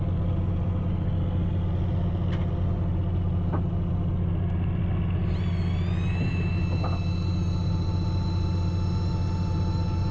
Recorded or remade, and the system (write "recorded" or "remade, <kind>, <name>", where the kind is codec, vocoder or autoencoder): recorded